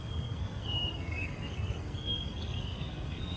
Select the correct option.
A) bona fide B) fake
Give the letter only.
B